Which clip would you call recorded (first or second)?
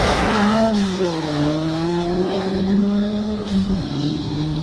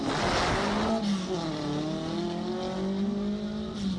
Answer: second